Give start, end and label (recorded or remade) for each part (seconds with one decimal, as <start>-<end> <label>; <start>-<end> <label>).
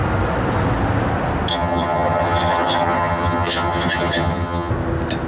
0.0-1.5 recorded; 1.5-4.7 remade; 4.7-5.3 recorded